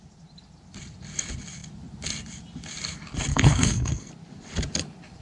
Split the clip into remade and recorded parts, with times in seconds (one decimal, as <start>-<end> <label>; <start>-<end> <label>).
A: 0.0-3.3 recorded; 3.3-4.1 remade; 4.1-5.2 recorded